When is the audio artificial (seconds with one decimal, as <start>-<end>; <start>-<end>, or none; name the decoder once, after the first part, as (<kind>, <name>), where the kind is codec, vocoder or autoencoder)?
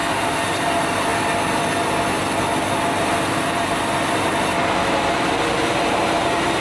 0.0-0.7 (vocoder, BigVGAN v2); 5.6-6.6